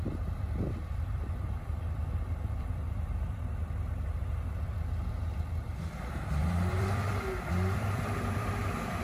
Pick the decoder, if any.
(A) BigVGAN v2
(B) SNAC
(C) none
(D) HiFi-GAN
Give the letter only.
A